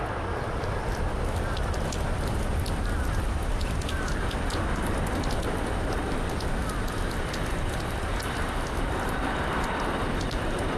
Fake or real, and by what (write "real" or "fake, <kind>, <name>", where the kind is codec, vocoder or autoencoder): fake, vocoder, BigVGAN v2